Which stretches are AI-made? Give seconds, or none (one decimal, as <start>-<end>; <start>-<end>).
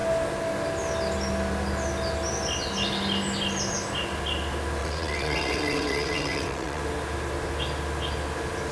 4.8-6.8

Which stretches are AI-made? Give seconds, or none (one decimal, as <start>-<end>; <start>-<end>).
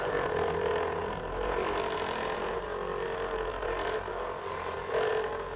none